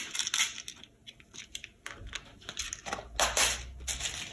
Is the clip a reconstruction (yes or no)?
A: no